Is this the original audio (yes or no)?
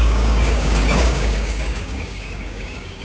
no